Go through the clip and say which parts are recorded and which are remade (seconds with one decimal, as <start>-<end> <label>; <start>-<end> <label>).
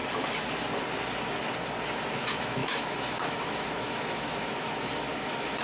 0.0-2.1 recorded; 2.1-5.6 remade